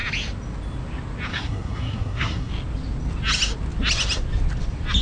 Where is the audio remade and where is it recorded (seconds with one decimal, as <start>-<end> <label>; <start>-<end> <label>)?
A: 0.0-1.3 recorded; 1.3-2.5 remade; 2.5-5.0 recorded